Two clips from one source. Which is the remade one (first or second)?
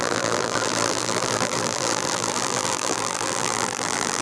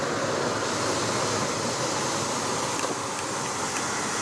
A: first